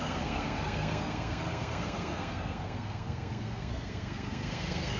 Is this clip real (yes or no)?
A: no